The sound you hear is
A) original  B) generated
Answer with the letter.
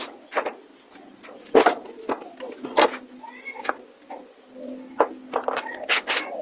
A